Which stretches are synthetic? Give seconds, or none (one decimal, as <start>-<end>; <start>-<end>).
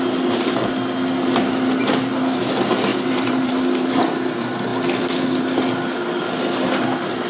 1.8-2.4; 2.9-4.0